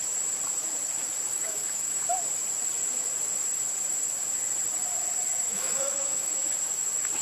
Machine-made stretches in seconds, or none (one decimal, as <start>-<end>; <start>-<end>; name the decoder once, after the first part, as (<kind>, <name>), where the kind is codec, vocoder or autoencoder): 1.3-2.0 (autoencoder, DAC-VAE); 5.5-6.4